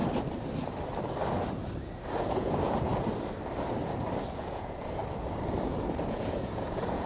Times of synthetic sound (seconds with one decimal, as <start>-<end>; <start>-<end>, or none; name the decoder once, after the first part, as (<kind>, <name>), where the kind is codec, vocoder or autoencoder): 2.3-2.9 (vocoder, Vocos); 4.4-5.0; 6.1-7.1